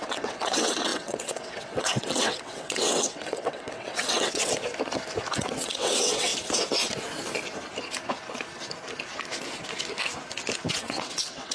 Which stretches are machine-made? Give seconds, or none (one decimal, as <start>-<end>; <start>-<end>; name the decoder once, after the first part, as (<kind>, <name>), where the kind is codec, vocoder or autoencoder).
0.0-4.5 (vocoder, WaveNeXt); 5.4-6.3; 10.7-11.5